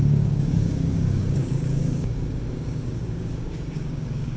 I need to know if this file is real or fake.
fake